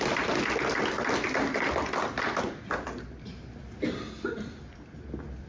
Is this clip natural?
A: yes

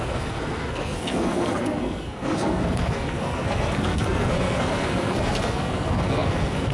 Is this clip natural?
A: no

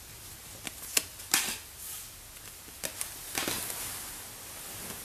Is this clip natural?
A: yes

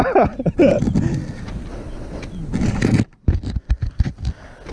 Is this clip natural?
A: yes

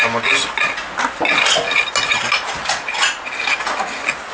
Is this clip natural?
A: yes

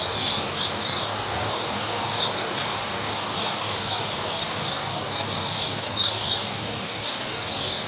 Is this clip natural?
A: no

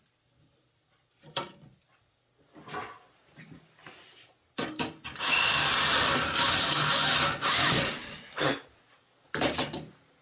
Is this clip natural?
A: yes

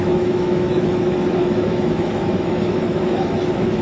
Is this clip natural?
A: no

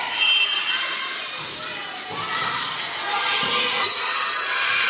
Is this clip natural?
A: yes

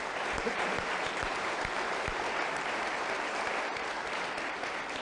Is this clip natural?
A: no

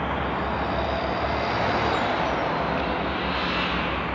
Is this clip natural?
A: yes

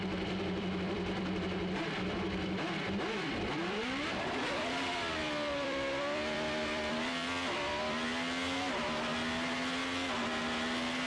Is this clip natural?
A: no